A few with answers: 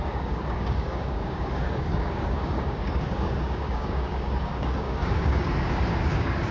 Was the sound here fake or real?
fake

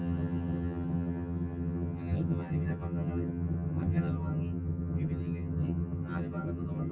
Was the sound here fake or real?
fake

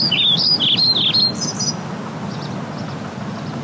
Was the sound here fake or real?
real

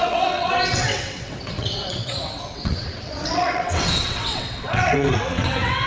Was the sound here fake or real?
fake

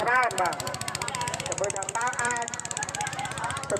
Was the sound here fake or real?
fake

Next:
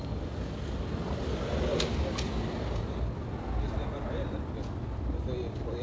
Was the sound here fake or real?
real